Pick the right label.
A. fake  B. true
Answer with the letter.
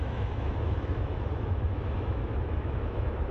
A